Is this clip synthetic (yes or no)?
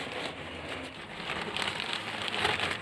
no